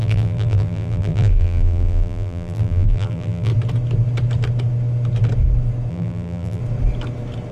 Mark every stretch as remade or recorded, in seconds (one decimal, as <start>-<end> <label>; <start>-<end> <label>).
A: 0.0-3.5 remade; 3.5-5.9 recorded; 5.9-6.6 remade; 6.6-7.5 recorded